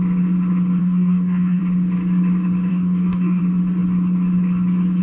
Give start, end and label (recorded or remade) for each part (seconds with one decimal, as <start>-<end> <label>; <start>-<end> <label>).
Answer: 0.0-0.8 recorded; 0.8-1.6 remade; 1.6-2.7 recorded; 2.7-3.4 remade; 3.4-5.0 recorded